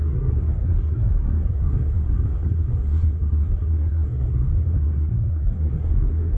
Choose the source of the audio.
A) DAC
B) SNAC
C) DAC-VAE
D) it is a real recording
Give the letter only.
B